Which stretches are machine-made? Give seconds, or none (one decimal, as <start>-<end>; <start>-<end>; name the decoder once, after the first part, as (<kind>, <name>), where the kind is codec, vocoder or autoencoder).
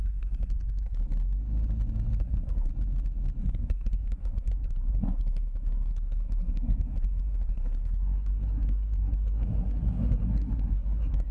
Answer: 0.0-1.0 (codec, SNAC); 2.2-2.7; 3.4-11.3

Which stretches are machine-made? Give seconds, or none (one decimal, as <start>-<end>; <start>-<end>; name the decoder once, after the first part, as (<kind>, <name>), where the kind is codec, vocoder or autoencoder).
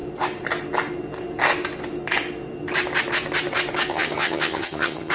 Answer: 3.9-5.1 (vocoder, HiFi-GAN)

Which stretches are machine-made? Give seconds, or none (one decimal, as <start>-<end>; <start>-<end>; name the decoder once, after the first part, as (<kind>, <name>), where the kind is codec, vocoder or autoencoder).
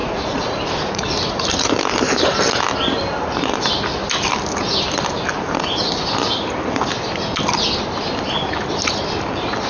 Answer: 0.0-1.8 (vocoder, Vocos)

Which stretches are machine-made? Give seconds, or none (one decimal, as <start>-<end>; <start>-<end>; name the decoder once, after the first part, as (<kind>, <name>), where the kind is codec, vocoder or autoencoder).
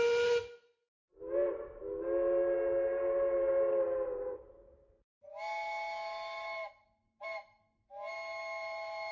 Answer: 3.7-5.1 (codec, DAC)